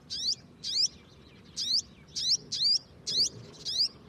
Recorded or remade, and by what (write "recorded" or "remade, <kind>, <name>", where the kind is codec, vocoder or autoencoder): recorded